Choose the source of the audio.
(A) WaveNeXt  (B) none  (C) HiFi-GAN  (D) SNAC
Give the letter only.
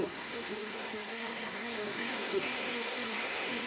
D